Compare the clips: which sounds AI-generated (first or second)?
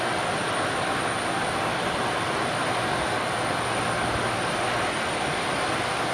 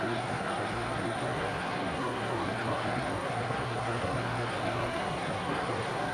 second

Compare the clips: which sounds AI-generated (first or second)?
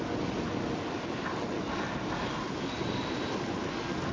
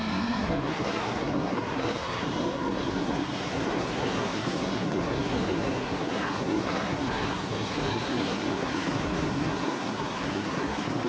second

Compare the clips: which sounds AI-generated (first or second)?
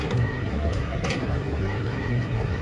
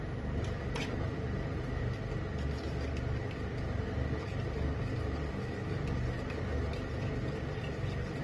first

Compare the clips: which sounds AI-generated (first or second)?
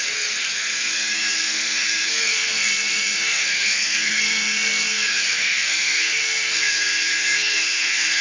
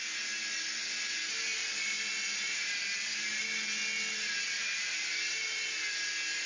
first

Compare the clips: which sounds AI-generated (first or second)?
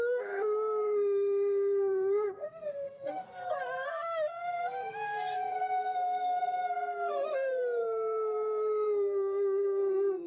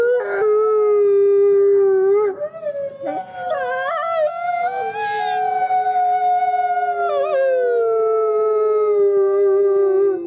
first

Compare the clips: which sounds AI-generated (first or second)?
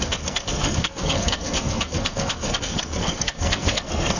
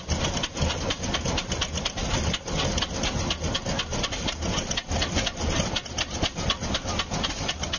first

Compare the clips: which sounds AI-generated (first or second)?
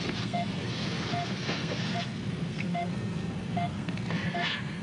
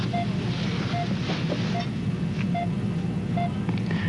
first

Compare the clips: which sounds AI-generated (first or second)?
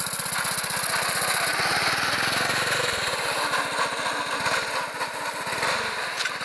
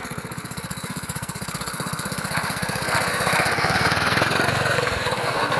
second